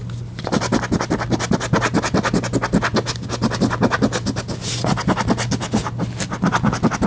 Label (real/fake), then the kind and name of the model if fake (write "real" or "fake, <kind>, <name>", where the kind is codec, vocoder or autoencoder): real